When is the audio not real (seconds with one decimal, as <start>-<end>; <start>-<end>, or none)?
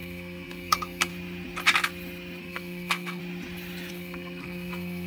0.0-1.1; 2.4-3.2; 3.9-5.1